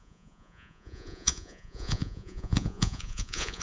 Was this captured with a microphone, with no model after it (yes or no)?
no